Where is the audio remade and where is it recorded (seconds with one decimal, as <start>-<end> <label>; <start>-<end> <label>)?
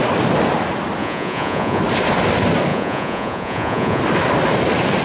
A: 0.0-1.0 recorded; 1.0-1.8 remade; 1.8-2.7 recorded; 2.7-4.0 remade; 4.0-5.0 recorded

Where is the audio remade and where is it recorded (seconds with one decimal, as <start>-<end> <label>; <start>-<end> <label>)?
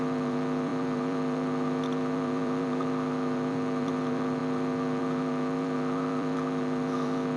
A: 0.0-7.4 remade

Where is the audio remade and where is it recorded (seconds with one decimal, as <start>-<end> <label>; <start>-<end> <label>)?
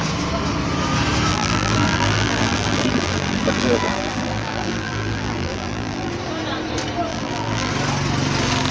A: 0.0-1.3 recorded; 1.3-6.1 remade; 6.1-7.1 recorded; 7.1-7.7 remade; 7.7-8.7 recorded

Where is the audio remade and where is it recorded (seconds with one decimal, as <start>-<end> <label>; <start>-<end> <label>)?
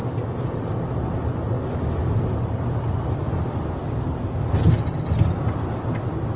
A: 0.0-6.4 recorded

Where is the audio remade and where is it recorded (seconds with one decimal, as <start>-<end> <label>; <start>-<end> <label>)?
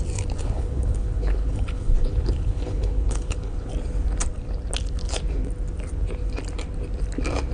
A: 0.0-0.4 recorded; 0.4-3.7 remade; 3.7-7.5 recorded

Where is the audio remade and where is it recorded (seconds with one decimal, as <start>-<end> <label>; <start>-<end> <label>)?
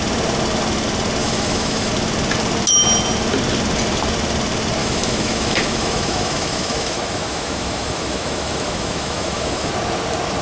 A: 0.0-1.2 recorded; 1.2-1.9 remade; 1.9-4.8 recorded; 4.8-9.7 remade; 9.7-10.4 recorded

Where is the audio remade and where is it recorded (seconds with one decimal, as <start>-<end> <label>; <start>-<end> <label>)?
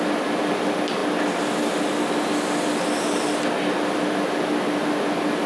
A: 0.0-5.5 recorded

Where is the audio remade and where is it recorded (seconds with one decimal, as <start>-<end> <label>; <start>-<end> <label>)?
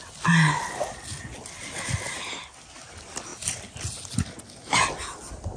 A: 0.0-5.6 recorded